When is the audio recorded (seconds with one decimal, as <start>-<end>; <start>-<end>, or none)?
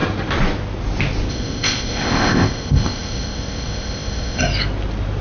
0.0-1.3; 4.4-5.2